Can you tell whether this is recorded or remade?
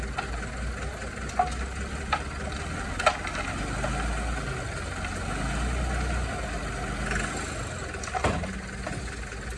recorded